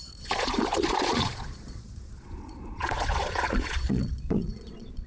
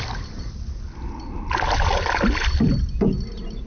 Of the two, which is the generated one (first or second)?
first